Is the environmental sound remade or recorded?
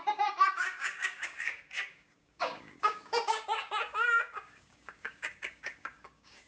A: remade